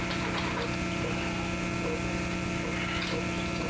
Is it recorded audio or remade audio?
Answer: recorded